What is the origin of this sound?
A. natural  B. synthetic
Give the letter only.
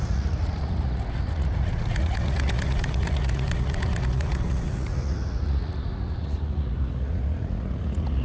B